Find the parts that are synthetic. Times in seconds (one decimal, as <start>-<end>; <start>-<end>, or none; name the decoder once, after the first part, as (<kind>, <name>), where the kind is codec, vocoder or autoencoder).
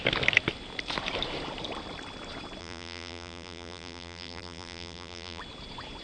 2.6-5.4 (vocoder, BigVGAN v2)